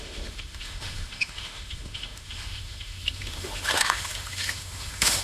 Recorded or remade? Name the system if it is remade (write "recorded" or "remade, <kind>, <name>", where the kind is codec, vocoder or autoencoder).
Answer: remade, autoencoder, DAC-VAE